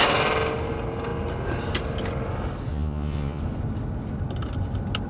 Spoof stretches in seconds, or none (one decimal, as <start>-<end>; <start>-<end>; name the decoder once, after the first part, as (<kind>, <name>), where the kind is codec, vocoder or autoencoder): 2.7-3.4 (vocoder, Vocos)